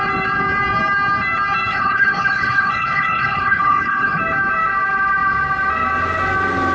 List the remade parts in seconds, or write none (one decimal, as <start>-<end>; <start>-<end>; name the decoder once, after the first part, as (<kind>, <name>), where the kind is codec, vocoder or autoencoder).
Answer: 1.7-4.2 (codec, HILCodec)